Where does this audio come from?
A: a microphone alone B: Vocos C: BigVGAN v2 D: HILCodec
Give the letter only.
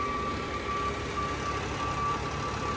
A